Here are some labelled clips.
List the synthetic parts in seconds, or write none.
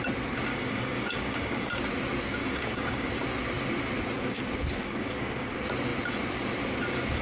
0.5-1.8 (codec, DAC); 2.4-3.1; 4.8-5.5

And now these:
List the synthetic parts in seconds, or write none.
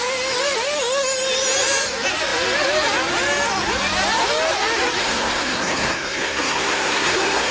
5.0-7.5 (codec, SNAC)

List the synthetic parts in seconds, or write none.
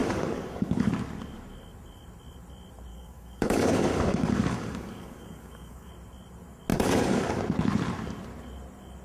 0.0-0.9 (codec, DAC); 2.9-5.9; 6.7-7.4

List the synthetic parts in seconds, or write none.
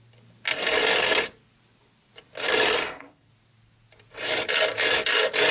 2.8-3.3 (codec, SNAC)